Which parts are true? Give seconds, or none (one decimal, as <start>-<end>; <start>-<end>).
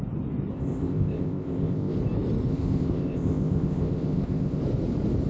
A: 0.0-0.5; 2.0-2.5; 4.6-5.3